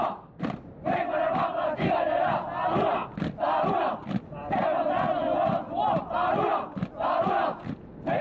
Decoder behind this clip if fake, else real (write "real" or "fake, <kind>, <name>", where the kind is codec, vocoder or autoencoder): real